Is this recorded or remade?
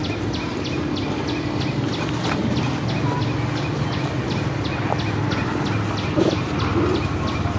recorded